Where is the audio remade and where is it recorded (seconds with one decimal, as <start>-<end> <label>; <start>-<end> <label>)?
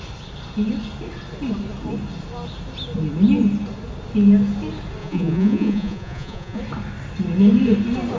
0.0-5.0 recorded; 5.0-6.6 remade; 6.6-8.2 recorded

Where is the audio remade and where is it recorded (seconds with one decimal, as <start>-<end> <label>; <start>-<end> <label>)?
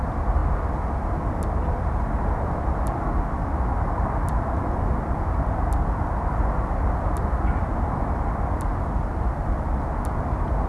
0.0-10.7 recorded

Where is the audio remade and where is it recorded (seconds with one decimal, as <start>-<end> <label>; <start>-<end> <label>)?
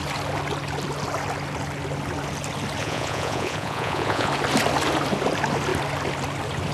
0.0-2.8 recorded; 2.8-4.3 remade; 4.3-6.7 recorded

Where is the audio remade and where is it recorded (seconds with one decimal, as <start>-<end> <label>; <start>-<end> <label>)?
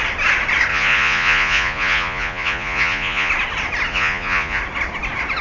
0.0-0.7 recorded; 0.7-3.3 remade; 3.3-3.9 recorded; 3.9-4.6 remade; 4.6-5.4 recorded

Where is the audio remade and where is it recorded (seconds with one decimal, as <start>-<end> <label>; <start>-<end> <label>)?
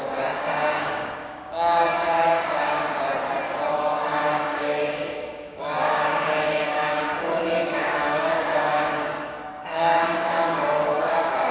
0.0-3.1 remade; 3.1-3.7 recorded; 3.7-11.5 remade